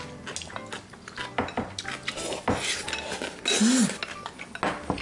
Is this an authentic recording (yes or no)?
yes